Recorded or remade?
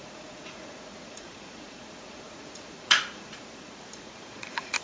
remade